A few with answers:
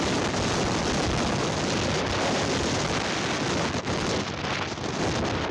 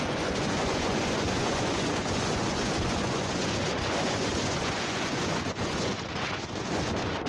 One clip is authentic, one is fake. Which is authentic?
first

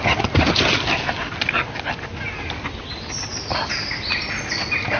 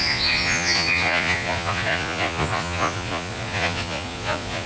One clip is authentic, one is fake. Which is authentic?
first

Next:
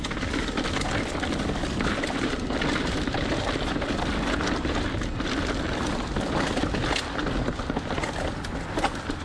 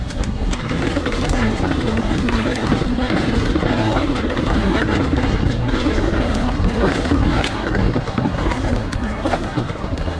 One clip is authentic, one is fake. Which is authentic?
first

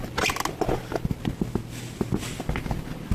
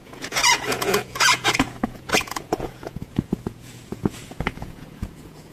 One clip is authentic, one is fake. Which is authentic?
first